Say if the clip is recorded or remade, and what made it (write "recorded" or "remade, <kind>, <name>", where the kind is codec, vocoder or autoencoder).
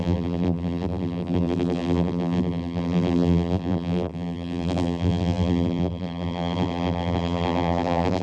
remade, vocoder, BigVGAN v2